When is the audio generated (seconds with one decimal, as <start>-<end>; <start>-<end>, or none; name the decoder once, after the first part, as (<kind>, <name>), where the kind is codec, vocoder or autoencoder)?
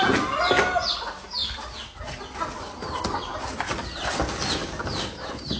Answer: none